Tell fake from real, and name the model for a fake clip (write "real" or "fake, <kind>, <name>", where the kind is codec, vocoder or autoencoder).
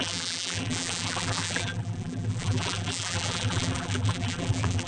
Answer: fake, vocoder, BigVGAN v2